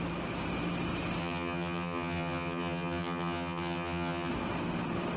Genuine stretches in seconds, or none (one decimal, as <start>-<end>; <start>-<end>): 0.0-1.2; 4.3-5.2